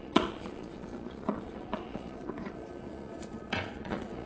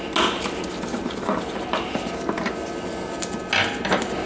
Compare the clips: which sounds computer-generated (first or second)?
first